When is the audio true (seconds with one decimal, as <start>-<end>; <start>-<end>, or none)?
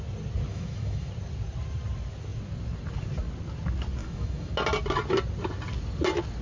0.0-0.5; 1.1-4.0; 4.5-6.4